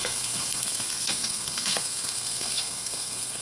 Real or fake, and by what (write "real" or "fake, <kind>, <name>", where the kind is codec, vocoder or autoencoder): fake, codec, SNAC